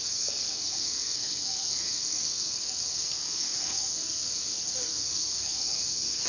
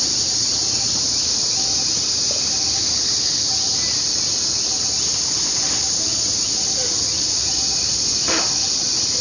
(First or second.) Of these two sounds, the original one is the second